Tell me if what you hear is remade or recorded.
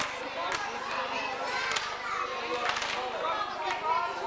recorded